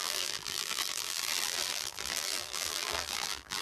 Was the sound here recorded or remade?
remade